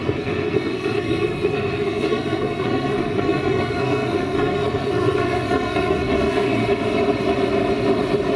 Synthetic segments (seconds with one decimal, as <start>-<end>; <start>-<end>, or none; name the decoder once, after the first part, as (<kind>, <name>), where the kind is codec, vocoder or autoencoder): 0.0-6.6 (codec, SNAC)